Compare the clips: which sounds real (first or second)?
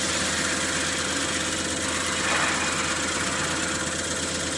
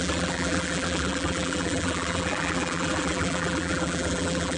first